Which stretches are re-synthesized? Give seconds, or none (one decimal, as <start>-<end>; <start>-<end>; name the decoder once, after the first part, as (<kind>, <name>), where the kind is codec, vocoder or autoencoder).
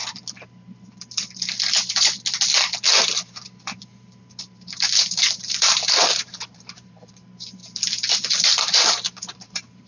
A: 4.4-7.6 (vocoder, BigVGAN v2); 8.3-9.9